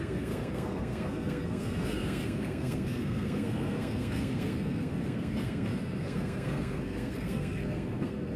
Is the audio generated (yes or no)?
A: yes